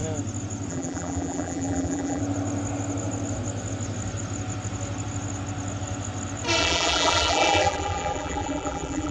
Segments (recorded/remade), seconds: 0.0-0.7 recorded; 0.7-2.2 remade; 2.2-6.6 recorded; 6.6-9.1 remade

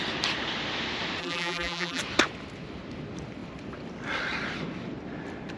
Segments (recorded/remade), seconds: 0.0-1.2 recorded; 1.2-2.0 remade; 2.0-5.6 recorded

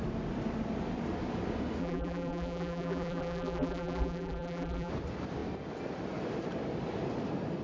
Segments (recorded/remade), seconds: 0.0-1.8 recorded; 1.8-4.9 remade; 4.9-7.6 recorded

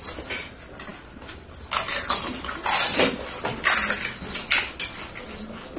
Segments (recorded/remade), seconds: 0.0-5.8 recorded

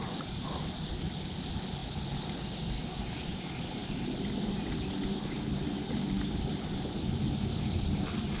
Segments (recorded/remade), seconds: 0.0-8.4 recorded